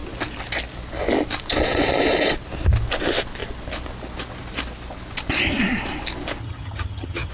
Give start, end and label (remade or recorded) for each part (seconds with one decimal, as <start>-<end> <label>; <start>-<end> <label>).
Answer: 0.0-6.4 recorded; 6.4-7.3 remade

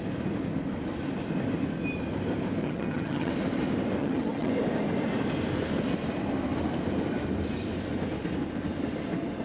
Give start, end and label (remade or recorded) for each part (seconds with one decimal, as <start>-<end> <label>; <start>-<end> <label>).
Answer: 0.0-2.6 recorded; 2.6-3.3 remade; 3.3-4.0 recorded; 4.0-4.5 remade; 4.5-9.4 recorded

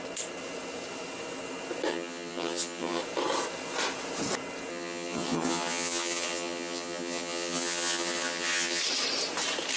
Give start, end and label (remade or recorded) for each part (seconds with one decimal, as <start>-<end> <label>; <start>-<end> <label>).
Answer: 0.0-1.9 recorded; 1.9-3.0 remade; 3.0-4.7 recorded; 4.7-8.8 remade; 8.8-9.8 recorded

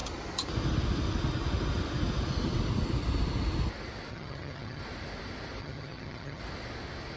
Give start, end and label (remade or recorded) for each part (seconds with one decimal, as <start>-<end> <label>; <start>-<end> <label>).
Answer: 0.0-4.1 recorded; 4.1-4.8 remade; 4.8-5.6 recorded; 5.6-6.4 remade; 6.4-7.2 recorded

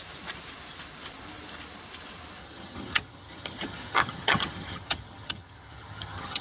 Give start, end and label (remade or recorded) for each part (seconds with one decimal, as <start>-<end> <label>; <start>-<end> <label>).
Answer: 0.0-2.4 recorded; 2.4-6.4 remade